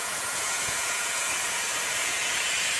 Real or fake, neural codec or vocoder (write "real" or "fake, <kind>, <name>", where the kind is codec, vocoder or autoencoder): fake, vocoder, Vocos